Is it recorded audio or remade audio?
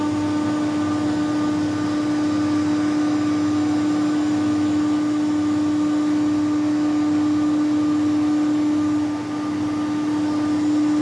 recorded